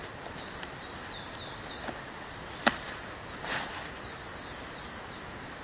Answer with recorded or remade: recorded